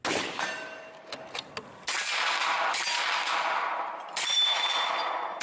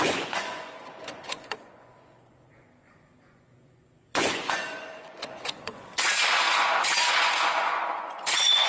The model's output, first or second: second